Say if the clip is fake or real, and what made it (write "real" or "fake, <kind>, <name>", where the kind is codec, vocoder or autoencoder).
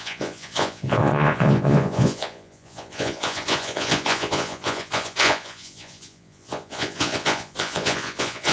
fake, vocoder, Vocos